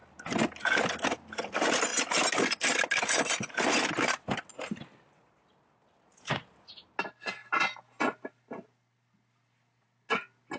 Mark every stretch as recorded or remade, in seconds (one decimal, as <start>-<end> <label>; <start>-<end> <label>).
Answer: 0.0-10.6 recorded